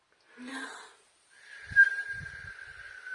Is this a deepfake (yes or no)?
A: no